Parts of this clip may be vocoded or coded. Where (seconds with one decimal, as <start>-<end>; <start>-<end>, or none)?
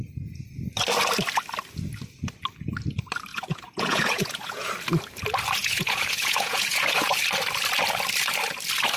3.3-4.7; 5.6-7.2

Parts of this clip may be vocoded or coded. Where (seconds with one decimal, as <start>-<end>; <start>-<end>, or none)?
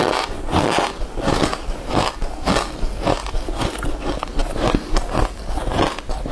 1.4-1.9; 4.4-5.1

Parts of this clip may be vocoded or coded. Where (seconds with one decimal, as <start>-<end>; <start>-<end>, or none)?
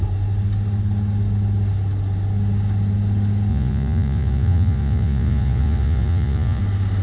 3.5-6.6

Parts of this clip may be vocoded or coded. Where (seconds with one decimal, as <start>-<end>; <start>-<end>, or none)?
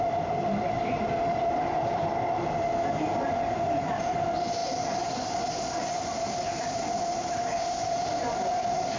0.0-4.6; 6.0-9.0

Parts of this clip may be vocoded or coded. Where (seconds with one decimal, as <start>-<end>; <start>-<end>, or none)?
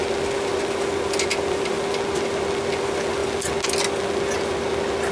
none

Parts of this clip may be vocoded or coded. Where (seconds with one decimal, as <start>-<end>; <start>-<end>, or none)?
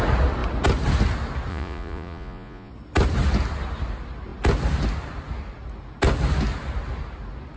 1.5-2.7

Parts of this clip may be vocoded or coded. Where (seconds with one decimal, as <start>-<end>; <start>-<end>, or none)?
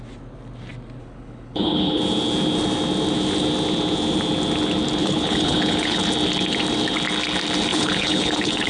1.0-2.0; 5.0-6.0; 7.7-8.7